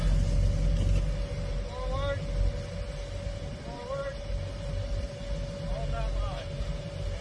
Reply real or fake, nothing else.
real